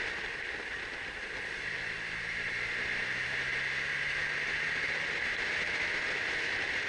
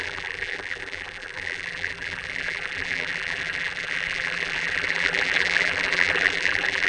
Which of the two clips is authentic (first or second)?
first